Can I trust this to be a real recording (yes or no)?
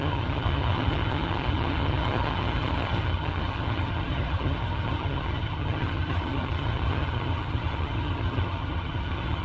no